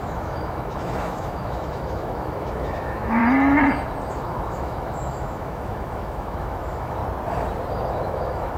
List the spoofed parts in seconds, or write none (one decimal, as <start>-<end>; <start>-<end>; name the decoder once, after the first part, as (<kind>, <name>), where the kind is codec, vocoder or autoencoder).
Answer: 0.0-3.2 (autoencoder, DAC-VAE); 4.1-7.0; 7.9-8.6